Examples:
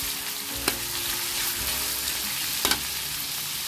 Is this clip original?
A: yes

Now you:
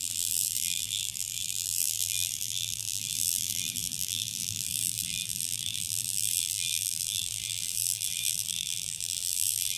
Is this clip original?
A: no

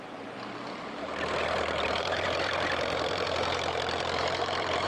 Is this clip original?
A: no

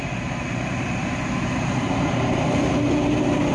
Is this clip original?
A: no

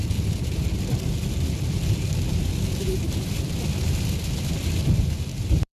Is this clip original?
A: no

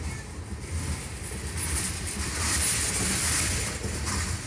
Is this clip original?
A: yes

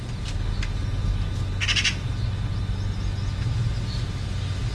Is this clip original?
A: yes